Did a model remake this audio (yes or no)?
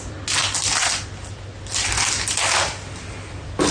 no